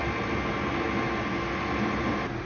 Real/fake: real